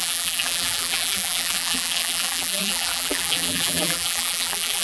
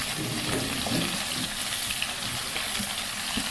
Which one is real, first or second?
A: second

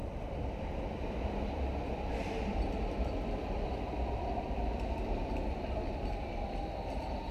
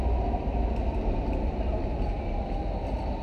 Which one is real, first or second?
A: second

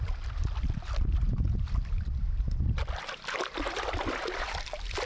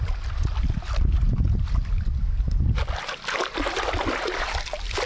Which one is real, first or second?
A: second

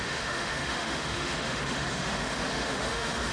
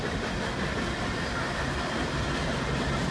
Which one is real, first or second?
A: second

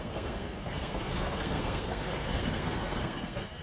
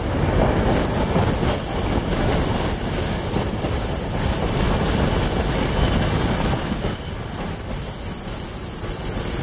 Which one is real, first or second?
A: second